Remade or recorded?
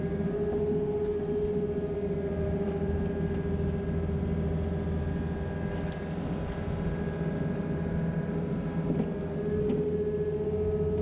recorded